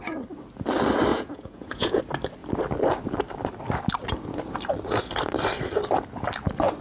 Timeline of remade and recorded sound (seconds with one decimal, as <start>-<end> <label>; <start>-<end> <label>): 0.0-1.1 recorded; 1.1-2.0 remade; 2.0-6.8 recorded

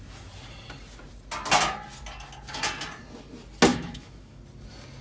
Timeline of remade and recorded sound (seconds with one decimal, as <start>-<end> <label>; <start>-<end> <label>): 0.0-3.7 recorded; 3.7-4.4 remade; 4.4-5.0 recorded

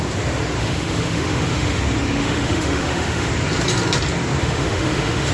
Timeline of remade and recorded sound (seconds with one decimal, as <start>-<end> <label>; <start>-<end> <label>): 0.0-0.6 recorded; 0.6-1.8 remade; 1.8-2.2 recorded; 2.2-3.3 remade; 3.3-4.4 recorded; 4.4-5.3 remade

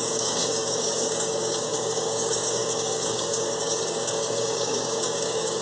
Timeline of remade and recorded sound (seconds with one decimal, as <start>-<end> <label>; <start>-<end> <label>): 0.0-5.6 remade